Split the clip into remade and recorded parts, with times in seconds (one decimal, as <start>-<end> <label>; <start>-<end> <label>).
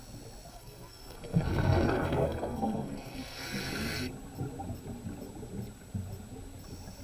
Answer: 0.0-0.5 recorded; 0.5-4.0 remade; 4.0-7.0 recorded